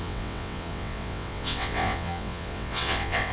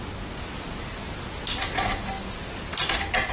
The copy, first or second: first